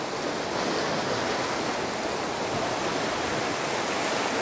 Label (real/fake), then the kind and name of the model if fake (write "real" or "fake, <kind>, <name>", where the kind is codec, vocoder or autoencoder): real